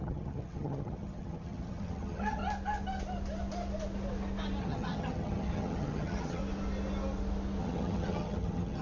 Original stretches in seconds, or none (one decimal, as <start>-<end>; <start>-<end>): 2.4-4.6; 6.4-7.6